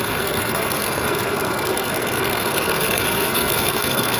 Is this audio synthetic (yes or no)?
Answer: yes